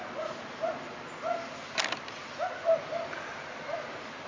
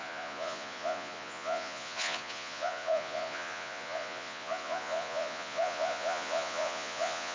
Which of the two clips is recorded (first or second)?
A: first